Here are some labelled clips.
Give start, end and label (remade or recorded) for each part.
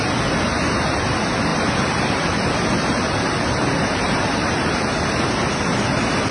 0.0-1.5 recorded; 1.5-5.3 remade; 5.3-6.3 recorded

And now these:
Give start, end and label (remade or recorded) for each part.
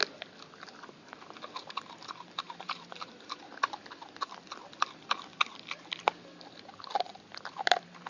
0.0-1.6 recorded; 1.6-3.4 remade; 3.4-8.1 recorded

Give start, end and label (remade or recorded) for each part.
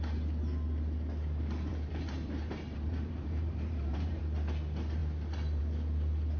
0.0-1.7 recorded; 1.7-4.2 remade; 4.2-6.4 recorded